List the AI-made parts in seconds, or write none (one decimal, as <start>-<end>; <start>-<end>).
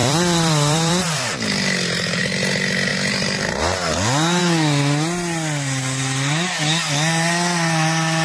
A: 0.0-2.2; 2.9-3.6